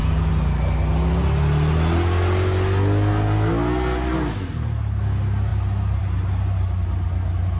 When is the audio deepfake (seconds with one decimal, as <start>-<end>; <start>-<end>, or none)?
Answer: none